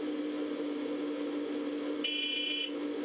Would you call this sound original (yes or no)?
yes